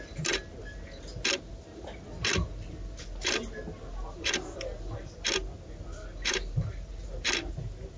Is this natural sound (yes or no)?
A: yes